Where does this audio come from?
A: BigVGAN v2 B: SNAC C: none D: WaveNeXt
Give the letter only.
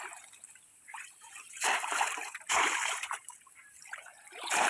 A